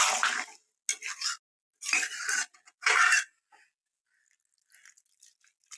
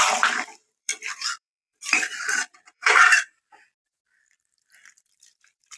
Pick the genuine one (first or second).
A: first